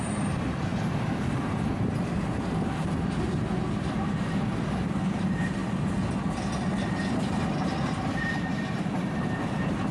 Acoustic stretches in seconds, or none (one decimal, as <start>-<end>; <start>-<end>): 5.6-7.9